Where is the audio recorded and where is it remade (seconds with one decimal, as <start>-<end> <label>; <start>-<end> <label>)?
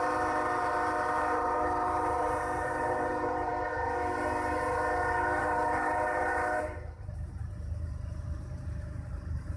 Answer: 0.0-3.5 remade; 3.5-5.4 recorded; 5.4-9.6 remade